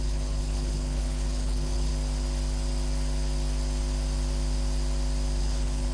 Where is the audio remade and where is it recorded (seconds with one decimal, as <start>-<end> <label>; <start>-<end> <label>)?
0.0-1.9 remade; 1.9-5.4 recorded; 5.4-5.9 remade